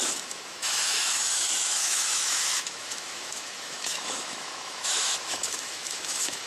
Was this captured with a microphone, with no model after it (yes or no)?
no